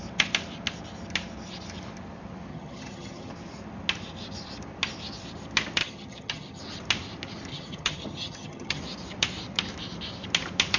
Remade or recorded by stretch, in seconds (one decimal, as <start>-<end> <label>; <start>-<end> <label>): 0.0-2.5 recorded; 2.5-3.3 remade; 3.3-5.8 recorded; 5.8-6.6 remade; 6.6-7.5 recorded; 7.5-8.8 remade; 8.8-10.8 recorded